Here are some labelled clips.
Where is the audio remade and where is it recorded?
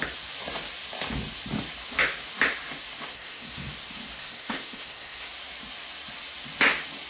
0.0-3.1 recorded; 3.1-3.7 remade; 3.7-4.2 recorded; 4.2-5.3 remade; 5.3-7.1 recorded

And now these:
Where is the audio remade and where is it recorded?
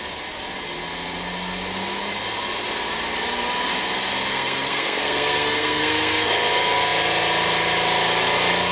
0.0-4.3 recorded; 4.3-6.3 remade; 6.3-8.7 recorded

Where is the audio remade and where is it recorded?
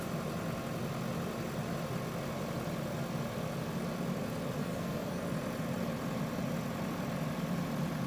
0.0-4.6 recorded; 4.6-5.2 remade; 5.2-8.1 recorded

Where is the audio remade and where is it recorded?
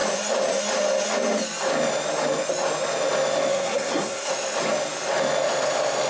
0.0-3.5 recorded; 3.5-4.3 remade; 4.3-6.1 recorded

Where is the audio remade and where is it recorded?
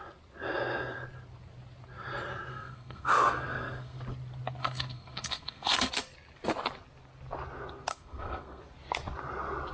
0.0-2.5 recorded; 2.5-4.0 remade; 4.0-4.6 recorded; 4.6-5.9 remade; 5.9-7.9 recorded; 7.9-8.6 remade; 8.6-9.7 recorded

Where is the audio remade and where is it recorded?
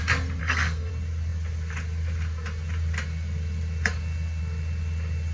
0.0-0.4 recorded; 0.4-0.9 remade; 0.9-5.3 recorded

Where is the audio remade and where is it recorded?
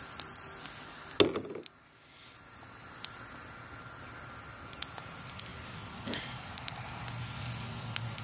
0.0-8.2 recorded